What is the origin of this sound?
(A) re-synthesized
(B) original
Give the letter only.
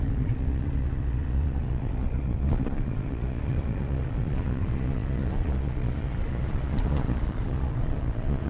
A